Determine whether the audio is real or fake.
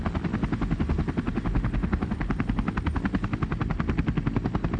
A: real